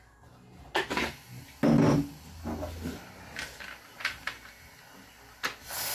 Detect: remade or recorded recorded